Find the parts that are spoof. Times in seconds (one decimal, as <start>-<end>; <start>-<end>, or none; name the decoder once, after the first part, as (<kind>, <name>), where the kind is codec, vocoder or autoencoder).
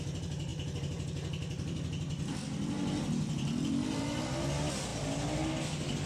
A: none